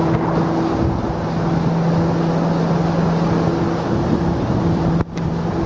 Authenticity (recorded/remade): recorded